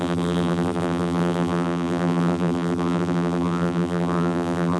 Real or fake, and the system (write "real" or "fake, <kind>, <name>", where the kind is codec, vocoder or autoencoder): fake, vocoder, BigVGAN v2